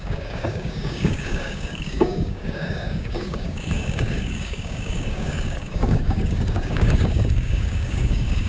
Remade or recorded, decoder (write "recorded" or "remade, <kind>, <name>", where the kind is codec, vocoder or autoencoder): remade, codec, DAC